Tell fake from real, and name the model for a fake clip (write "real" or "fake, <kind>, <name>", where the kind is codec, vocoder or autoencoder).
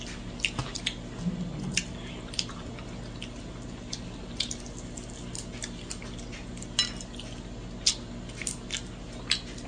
real